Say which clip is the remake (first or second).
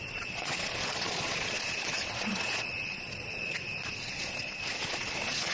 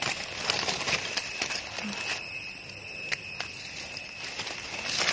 first